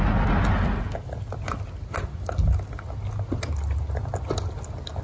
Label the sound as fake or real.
real